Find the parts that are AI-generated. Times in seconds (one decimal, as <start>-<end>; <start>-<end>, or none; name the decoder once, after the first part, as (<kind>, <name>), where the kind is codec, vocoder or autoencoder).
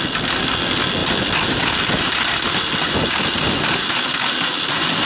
none